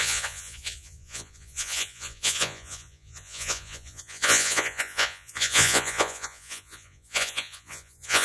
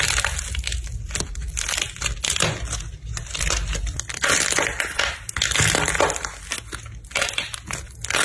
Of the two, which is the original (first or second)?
second